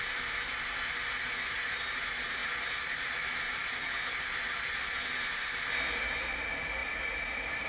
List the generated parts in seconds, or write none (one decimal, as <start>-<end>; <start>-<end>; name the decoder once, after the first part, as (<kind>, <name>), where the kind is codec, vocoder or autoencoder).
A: none